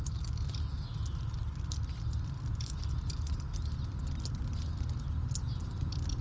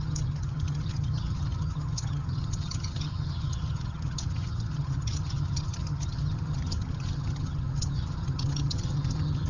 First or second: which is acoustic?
first